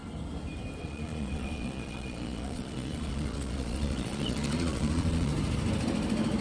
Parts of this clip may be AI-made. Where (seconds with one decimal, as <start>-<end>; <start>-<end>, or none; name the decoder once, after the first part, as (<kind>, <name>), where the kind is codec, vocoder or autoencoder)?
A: 0.8-5.3 (vocoder, Vocos)